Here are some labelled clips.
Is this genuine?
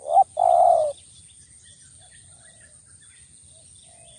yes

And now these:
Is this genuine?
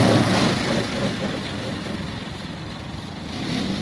yes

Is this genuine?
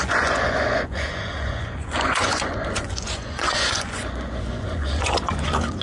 no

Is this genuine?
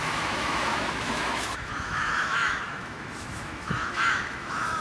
no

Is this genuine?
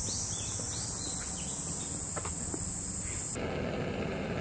yes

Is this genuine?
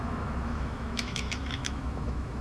no